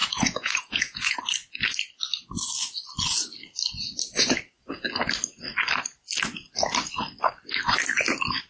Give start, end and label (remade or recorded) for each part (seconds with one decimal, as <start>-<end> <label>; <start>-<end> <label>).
0.0-1.2 remade; 1.2-8.5 recorded